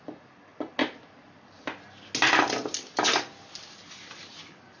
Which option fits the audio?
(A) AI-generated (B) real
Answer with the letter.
B